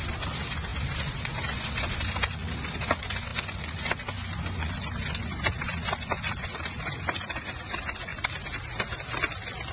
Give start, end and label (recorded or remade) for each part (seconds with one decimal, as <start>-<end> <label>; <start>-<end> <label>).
0.0-8.1 remade; 8.1-9.7 recorded